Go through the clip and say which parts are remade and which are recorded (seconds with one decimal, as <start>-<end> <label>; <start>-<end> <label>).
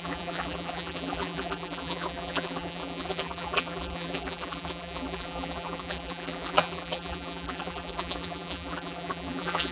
0.0-9.7 remade